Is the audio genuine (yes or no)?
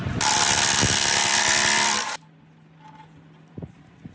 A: yes